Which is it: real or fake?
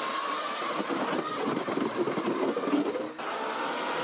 real